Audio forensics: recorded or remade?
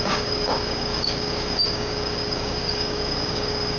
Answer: remade